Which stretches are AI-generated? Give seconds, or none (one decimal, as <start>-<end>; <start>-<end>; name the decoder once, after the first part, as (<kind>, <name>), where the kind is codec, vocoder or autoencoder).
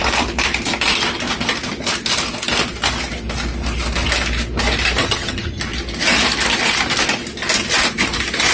5.0-5.6 (vocoder, HiFi-GAN)